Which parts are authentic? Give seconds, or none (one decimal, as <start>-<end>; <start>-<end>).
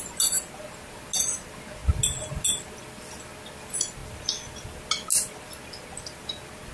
0.0-6.7